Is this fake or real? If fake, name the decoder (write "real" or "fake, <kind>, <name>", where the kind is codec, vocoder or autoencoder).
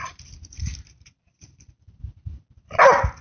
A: real